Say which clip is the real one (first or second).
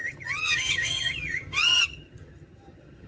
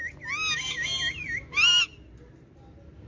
second